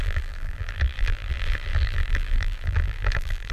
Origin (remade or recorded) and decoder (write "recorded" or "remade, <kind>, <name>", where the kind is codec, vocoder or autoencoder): remade, vocoder, BigVGAN v2